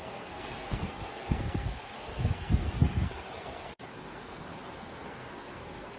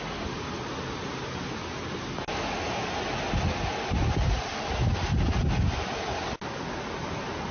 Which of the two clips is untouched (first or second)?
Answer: second